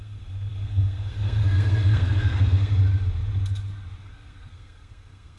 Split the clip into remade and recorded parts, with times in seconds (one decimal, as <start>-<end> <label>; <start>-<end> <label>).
0.0-2.8 remade; 2.8-4.0 recorded; 4.0-5.4 remade